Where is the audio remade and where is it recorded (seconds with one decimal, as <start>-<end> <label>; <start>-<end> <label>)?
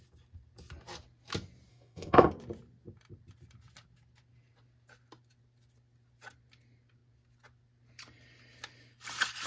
0.0-1.7 recorded; 1.7-2.3 remade; 2.3-9.5 recorded